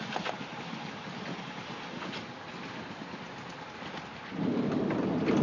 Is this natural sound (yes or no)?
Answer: yes